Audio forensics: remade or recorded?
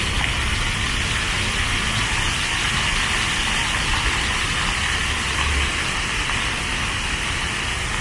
recorded